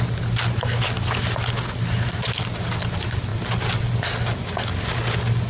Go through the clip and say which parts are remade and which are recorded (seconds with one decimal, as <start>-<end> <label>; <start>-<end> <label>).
0.0-5.5 recorded